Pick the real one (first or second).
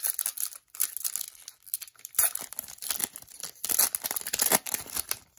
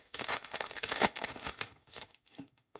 first